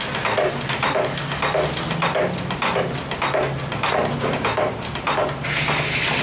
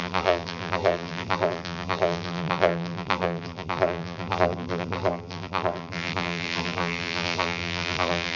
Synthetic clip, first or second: second